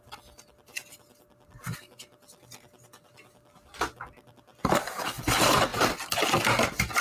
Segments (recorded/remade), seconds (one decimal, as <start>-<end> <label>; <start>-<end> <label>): 0.0-4.5 recorded; 4.5-5.0 remade; 5.0-5.7 recorded; 5.7-6.3 remade; 6.3-7.0 recorded